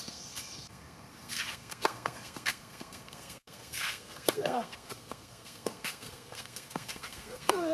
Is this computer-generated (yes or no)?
yes